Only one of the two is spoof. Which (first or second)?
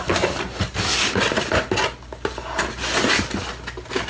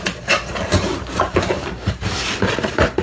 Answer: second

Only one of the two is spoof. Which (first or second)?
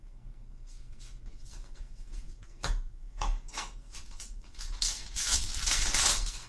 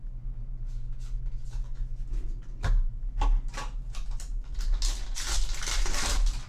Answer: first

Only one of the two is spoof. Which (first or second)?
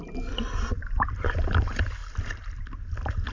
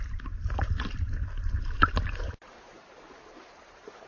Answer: second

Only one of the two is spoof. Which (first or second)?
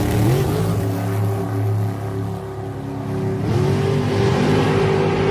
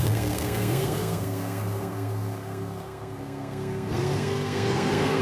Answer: second